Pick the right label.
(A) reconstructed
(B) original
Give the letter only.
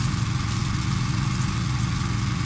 A